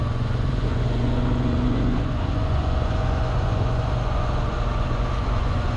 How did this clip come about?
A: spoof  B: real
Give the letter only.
A